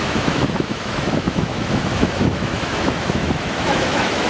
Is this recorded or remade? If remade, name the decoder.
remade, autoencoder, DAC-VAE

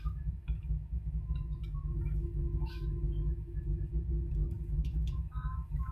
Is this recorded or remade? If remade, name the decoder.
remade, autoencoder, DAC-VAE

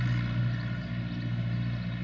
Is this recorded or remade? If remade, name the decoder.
recorded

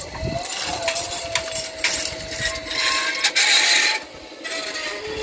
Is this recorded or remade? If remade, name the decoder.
recorded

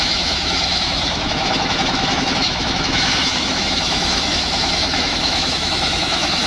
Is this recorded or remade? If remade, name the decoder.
remade, autoencoder, DAC-VAE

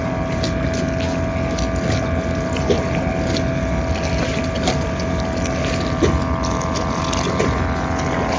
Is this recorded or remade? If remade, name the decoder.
recorded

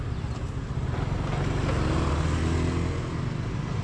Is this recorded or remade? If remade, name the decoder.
recorded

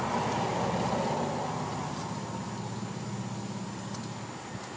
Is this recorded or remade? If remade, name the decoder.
recorded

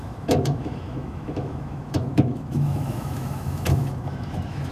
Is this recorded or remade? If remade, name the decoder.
remade, autoencoder, DAC-VAE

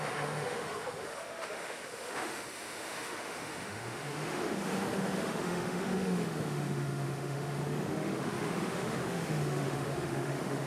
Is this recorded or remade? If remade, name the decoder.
remade, autoencoder, DAC-VAE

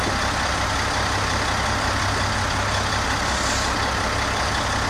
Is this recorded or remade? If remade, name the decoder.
recorded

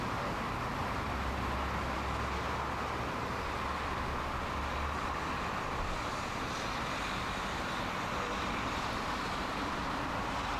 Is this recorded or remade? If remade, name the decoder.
recorded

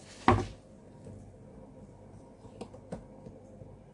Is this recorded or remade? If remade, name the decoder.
recorded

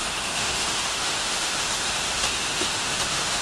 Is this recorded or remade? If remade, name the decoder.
remade, autoencoder, DAC-VAE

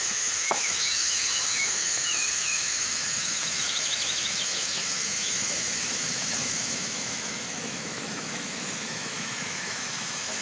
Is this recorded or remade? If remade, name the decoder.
remade, autoencoder, DAC-VAE